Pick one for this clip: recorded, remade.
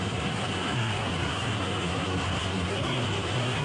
remade